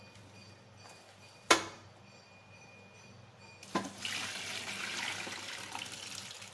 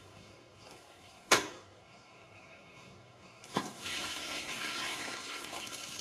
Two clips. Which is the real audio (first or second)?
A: first